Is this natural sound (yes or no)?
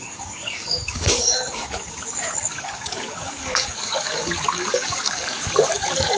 no